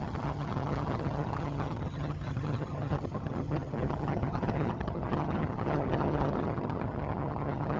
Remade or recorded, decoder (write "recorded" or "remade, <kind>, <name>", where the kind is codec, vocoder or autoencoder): remade, vocoder, HiFi-GAN